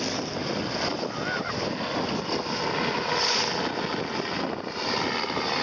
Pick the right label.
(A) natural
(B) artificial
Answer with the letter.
A